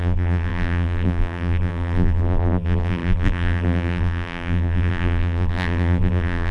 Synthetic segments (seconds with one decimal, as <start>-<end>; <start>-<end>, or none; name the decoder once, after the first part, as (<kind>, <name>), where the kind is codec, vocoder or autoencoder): 0.0-6.5 (vocoder, BigVGAN v2)